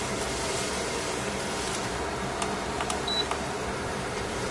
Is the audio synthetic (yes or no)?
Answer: yes